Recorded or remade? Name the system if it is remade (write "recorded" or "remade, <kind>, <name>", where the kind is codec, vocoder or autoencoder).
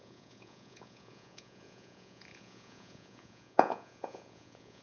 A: remade, vocoder, Vocos